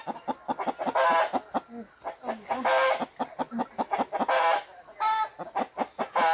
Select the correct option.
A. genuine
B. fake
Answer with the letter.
A